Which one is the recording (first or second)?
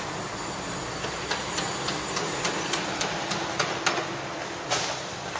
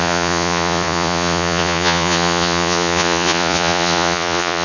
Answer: first